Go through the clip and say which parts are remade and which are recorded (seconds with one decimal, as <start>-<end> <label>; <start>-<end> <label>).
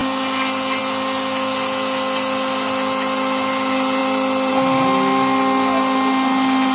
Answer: 0.0-6.7 recorded